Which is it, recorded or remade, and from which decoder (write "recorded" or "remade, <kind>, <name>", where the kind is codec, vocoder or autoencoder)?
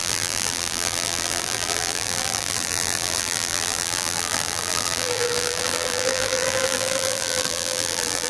remade, vocoder, BigVGAN v2